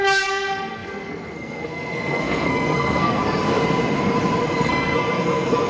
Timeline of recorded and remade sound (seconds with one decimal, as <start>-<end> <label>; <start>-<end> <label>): 0.0-3.2 remade; 3.2-4.6 recorded; 4.6-5.7 remade